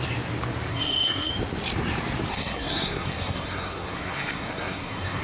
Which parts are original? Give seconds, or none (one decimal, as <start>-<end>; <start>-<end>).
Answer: 0.0-0.7; 1.3-2.3

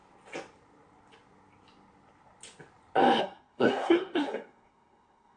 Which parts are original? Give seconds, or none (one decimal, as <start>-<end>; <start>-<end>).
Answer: 0.0-3.2

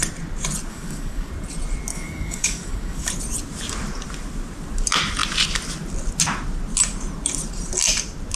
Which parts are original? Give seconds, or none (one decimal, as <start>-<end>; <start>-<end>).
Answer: 0.0-0.7; 1.3-1.9; 3.1-8.4

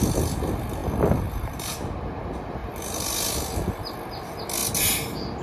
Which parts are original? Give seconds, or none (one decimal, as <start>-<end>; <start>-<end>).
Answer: 0.0-5.4

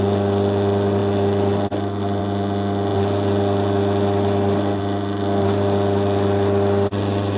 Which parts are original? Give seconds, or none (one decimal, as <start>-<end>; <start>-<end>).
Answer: 0.0-7.4